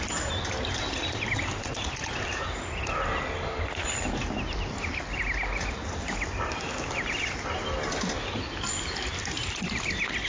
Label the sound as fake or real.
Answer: real